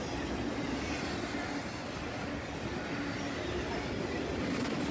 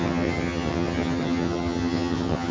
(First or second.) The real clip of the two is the first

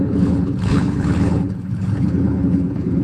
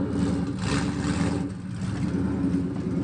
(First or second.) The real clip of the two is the second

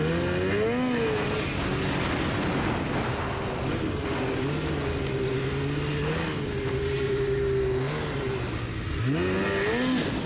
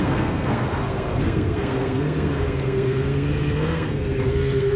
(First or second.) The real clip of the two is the first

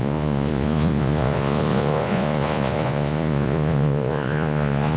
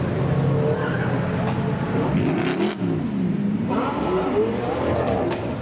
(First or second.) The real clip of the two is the second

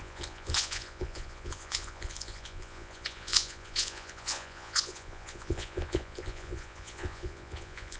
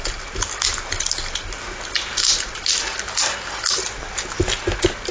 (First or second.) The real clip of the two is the second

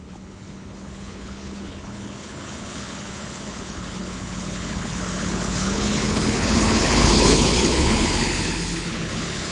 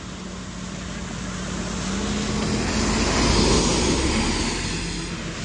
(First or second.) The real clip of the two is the second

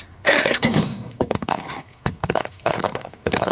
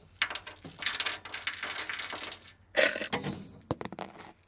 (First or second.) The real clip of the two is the second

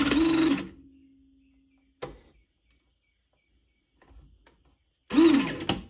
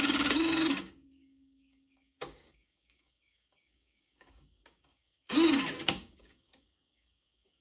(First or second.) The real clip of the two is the first